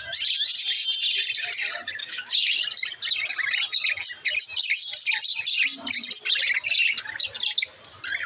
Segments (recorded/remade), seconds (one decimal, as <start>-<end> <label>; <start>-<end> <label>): 0.0-2.0 recorded; 2.0-2.6 remade; 2.6-8.3 recorded